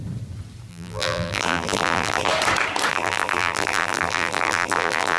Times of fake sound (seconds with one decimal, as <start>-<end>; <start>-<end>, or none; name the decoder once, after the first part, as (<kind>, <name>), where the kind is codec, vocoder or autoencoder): 0.7-2.3 (vocoder, BigVGAN v2); 2.9-5.2